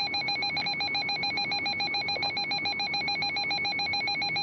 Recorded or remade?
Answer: recorded